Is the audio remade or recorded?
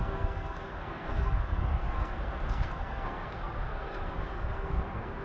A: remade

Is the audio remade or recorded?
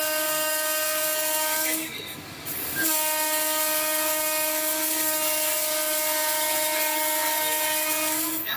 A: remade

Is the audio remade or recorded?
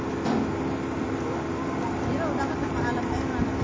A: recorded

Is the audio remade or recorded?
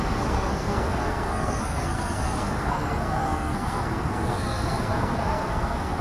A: remade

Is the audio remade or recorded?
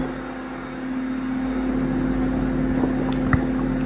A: recorded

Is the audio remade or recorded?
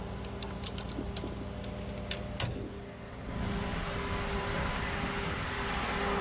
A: recorded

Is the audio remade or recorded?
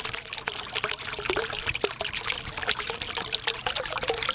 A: recorded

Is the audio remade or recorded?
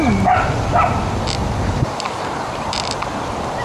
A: recorded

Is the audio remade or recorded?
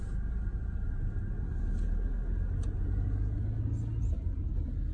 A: recorded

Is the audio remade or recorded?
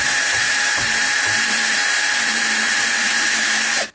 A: remade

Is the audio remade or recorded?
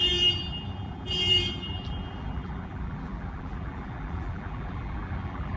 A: remade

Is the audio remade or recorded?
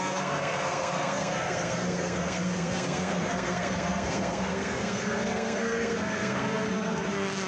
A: remade